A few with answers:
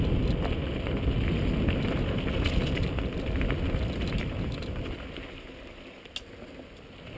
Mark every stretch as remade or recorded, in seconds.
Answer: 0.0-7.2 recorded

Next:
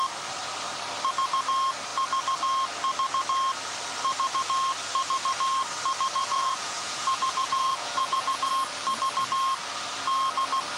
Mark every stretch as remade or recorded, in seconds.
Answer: 0.0-6.2 recorded; 6.2-8.5 remade; 8.5-10.8 recorded

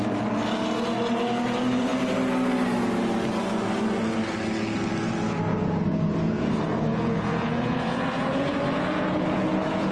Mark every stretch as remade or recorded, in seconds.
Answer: 0.0-5.5 recorded; 5.5-9.9 remade

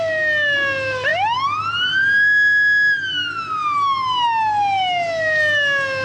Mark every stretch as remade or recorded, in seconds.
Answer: 0.0-6.0 recorded

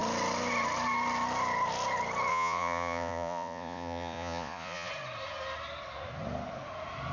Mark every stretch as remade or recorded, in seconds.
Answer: 0.0-2.3 recorded; 2.3-4.9 remade; 4.9-7.1 recorded

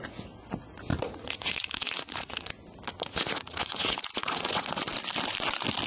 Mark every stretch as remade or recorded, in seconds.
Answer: 0.0-0.9 recorded; 0.9-2.5 remade; 2.5-2.9 recorded; 2.9-4.8 remade; 4.8-5.9 recorded

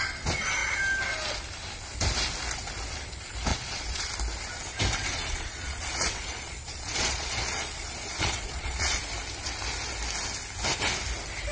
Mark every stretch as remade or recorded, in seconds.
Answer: 0.0-3.5 recorded; 3.5-4.1 remade; 4.1-5.1 recorded; 5.1-9.1 remade; 9.1-11.5 recorded

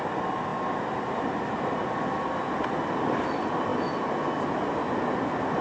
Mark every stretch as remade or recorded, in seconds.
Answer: 0.0-5.6 recorded